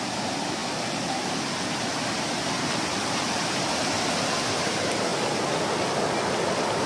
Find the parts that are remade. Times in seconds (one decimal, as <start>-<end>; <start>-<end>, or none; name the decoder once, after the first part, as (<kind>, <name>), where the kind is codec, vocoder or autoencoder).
none